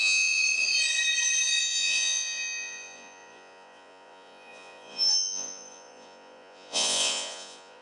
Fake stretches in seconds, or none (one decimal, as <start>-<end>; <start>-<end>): 0.0-0.4; 1.6-7.8